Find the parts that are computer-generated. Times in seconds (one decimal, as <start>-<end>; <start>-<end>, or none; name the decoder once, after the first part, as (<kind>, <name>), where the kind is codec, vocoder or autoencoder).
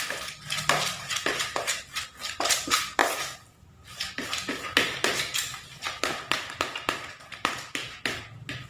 none